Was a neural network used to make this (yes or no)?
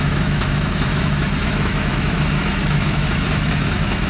yes